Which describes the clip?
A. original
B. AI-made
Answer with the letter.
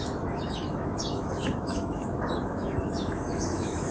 B